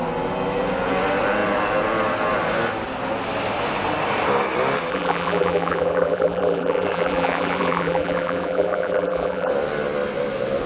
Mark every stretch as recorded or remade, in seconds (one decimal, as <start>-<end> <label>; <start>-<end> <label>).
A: 0.0-4.9 recorded; 4.9-9.5 remade; 9.5-10.7 recorded